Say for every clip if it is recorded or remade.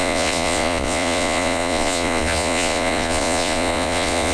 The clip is remade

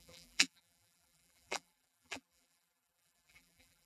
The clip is remade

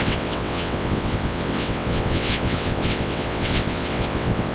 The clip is remade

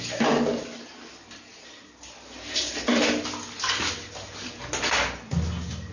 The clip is recorded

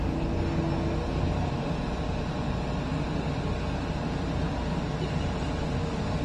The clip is recorded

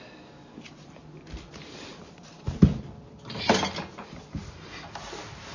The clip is recorded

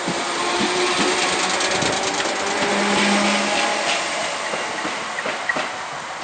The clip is recorded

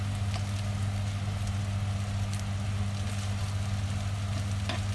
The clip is recorded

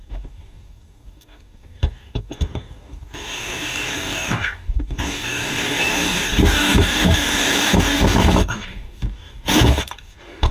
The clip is remade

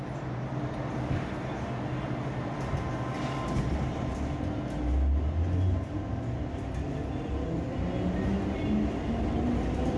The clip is recorded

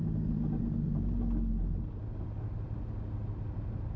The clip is recorded